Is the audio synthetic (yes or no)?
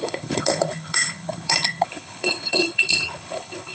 yes